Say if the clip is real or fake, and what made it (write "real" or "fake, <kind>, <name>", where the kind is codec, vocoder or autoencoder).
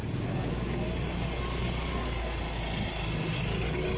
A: real